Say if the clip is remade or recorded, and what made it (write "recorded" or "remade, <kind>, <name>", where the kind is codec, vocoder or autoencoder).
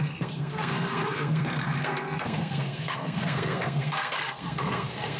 remade, codec, SNAC